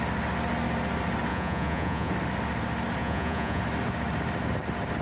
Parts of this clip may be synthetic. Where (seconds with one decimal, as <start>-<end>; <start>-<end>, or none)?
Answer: 1.3-2.1; 3.0-3.6